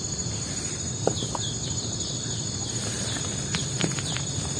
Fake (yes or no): no